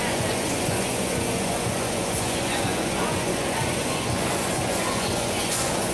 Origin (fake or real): fake